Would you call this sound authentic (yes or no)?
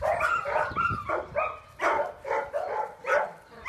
yes